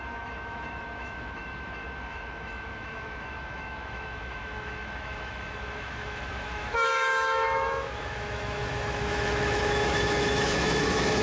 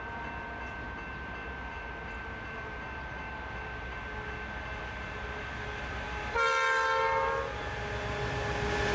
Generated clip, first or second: first